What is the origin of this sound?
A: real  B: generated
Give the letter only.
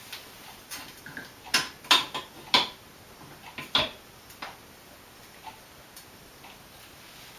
A